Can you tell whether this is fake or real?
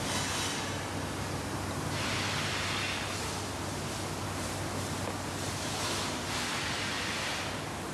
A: real